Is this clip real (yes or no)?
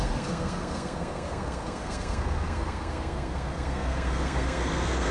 no